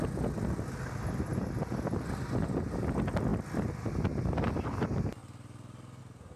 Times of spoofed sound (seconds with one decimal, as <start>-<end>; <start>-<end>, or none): none